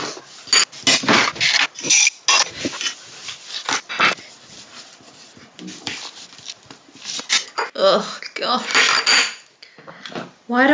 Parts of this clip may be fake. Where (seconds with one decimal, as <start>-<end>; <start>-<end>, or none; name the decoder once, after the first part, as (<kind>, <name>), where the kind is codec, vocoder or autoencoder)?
none